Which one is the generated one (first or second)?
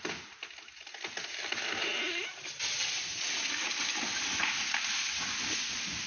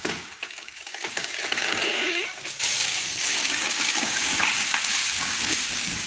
second